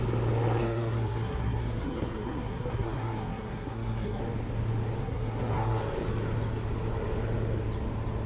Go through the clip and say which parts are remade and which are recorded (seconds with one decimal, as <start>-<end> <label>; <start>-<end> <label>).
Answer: 0.0-0.6 recorded; 0.6-4.2 remade; 4.2-5.0 recorded; 5.0-5.8 remade; 5.8-8.3 recorded